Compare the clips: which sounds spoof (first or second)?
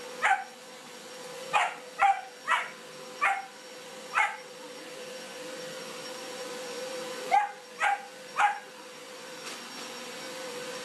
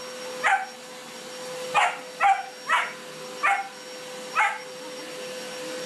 first